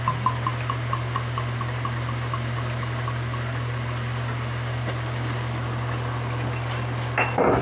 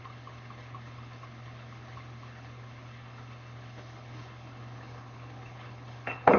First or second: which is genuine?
first